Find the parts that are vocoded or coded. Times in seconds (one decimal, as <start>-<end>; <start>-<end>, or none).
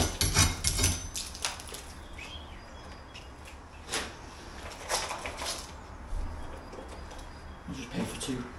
none